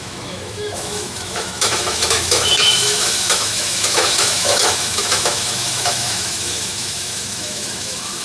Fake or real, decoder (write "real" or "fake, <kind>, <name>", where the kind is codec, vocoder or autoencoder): fake, autoencoder, DAC-VAE